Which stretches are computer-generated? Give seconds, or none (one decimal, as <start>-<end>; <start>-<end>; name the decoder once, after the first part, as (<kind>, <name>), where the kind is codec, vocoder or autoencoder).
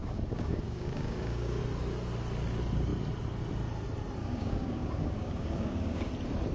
0.0-1.6 (codec, DAC); 4.2-6.1